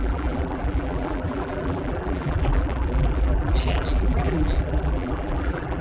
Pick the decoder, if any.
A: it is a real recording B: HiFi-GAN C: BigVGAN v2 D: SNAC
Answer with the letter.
C